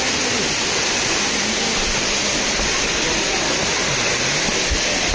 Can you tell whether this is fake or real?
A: real